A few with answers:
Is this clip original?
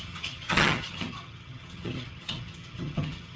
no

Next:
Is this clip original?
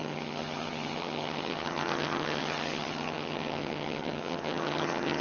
no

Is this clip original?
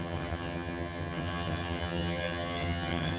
no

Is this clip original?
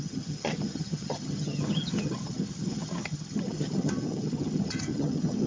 no